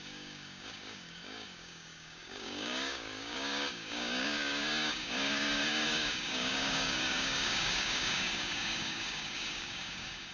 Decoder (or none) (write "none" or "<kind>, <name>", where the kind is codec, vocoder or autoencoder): codec, DAC